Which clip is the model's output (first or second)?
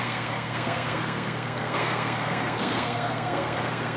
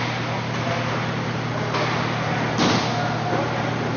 first